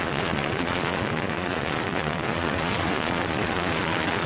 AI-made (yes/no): yes